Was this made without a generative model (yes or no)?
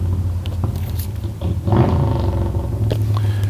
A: yes